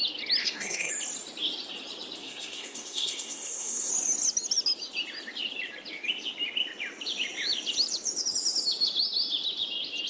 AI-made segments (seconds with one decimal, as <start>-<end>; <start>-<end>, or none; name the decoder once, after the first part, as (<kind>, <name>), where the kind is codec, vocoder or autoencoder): 0.4-0.9 (codec, SNAC); 2.2-3.9